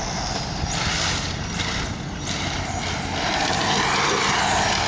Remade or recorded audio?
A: recorded